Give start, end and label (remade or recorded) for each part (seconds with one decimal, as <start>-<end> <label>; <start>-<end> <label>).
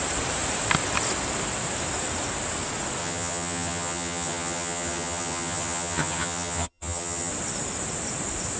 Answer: 0.0-3.0 recorded; 3.0-7.3 remade; 7.3-8.6 recorded